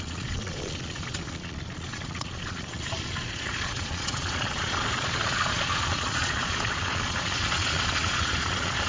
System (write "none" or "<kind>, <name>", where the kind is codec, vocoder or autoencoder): vocoder, Vocos